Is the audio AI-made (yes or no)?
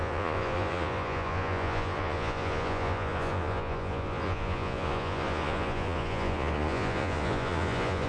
yes